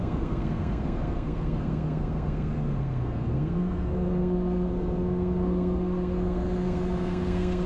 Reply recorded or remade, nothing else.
remade